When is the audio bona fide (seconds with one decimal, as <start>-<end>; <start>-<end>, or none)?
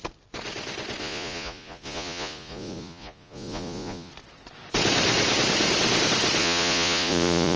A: 0.0-1.0; 4.1-6.4